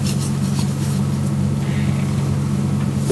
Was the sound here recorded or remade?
recorded